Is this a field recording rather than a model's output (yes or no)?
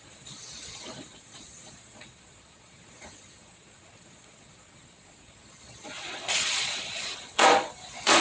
no